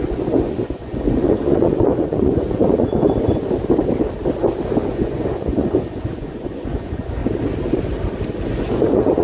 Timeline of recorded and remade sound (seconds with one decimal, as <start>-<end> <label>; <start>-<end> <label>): 0.0-3.4 remade; 3.4-4.9 recorded; 4.9-7.2 remade; 7.2-8.5 recorded; 8.5-9.2 remade